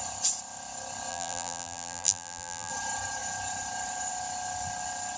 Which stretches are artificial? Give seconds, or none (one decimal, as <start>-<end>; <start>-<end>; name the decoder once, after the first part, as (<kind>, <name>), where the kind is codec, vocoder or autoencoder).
1.1-2.7 (vocoder, BigVGAN v2)